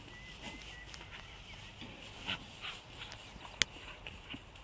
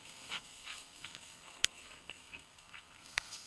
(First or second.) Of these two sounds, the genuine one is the first